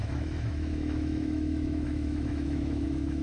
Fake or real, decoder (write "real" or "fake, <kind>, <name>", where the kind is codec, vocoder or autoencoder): fake, autoencoder, DAC-VAE